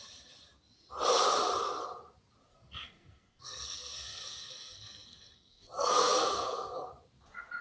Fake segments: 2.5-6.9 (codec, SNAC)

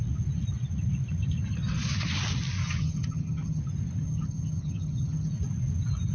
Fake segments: 2.6-3.6 (vocoder, HiFi-GAN); 4.0-5.3

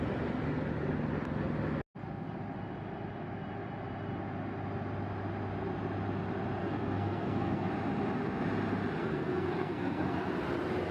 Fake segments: 6.6-7.7 (codec, SNAC); 9.0-10.3

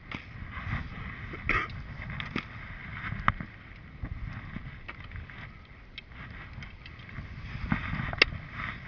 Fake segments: none